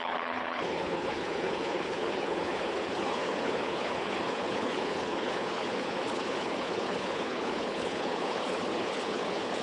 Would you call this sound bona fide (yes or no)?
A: no